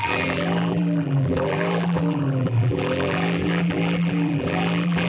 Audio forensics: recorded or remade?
remade